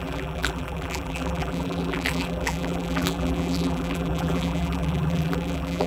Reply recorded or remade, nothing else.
remade